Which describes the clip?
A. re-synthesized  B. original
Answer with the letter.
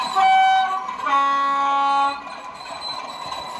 B